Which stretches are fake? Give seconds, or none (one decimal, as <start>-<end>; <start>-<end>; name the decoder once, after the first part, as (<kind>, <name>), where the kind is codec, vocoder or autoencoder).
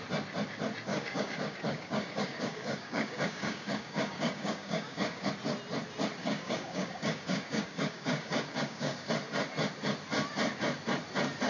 0.9-5.3 (codec, DAC); 6.2-9.1